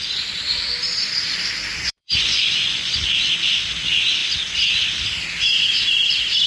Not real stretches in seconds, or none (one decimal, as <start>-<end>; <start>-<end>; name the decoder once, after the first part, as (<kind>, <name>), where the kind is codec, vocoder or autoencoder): 1.7-3.2 (vocoder, Vocos)